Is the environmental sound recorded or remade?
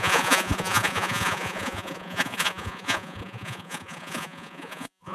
remade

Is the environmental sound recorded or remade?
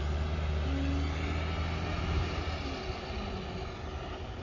recorded